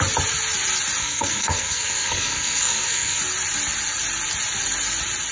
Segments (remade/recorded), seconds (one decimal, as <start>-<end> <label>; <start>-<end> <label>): 0.0-1.0 recorded; 1.0-3.2 remade; 3.2-5.3 recorded